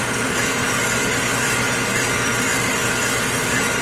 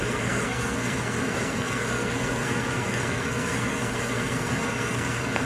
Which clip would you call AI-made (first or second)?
second